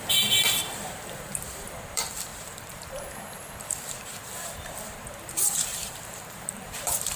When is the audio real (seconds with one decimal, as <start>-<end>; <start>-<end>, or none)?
none